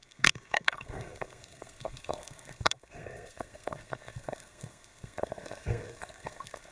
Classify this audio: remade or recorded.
remade